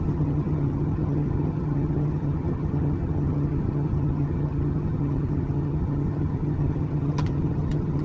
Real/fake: fake